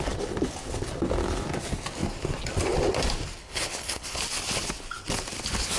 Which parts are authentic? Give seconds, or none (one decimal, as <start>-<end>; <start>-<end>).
0.0-3.4; 4.2-5.8